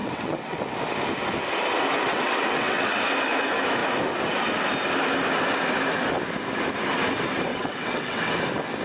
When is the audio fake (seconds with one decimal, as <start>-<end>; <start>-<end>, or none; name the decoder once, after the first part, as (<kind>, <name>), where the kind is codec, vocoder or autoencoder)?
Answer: 0.0-0.6 (vocoder, WaveNeXt); 2.1-3.0; 7.5-8.3